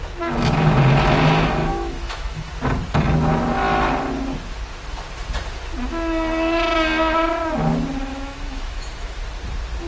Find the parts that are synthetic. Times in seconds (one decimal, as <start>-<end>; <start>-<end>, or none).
1.6-2.5; 8.1-9.2